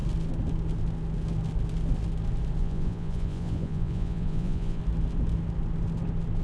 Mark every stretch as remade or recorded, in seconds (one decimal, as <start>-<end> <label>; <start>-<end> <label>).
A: 0.0-2.6 recorded; 2.6-4.8 remade; 4.8-6.4 recorded